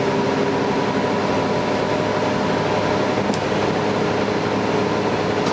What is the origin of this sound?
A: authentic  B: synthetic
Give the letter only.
A